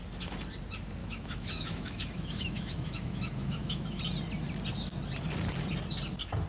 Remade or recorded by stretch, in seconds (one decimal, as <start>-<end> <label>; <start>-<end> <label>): 0.0-1.0 recorded; 1.0-4.0 remade; 4.0-6.5 recorded